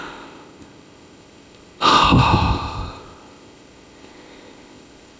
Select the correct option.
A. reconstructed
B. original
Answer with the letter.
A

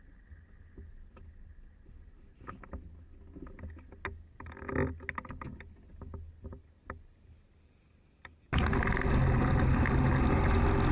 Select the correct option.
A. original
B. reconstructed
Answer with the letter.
A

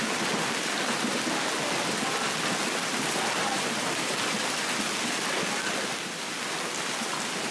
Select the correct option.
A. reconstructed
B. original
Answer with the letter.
B